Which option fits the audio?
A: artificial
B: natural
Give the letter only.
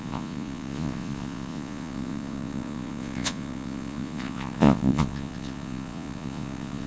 A